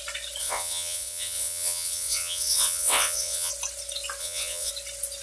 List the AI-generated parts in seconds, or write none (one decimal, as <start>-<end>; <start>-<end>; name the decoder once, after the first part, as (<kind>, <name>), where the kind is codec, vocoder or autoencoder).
0.4-3.5 (vocoder, WaveNeXt); 4.2-4.7